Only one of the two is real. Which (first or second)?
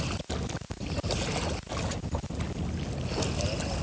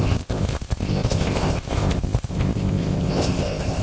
first